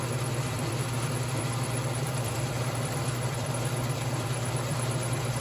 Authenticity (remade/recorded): remade